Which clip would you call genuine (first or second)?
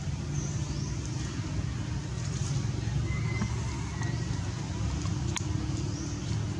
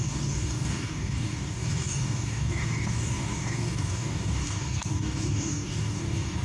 first